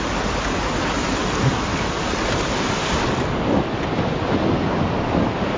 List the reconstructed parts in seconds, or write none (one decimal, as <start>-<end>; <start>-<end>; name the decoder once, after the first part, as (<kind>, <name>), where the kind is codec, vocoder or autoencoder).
none